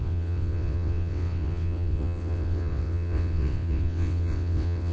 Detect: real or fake fake